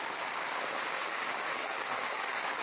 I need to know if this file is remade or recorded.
remade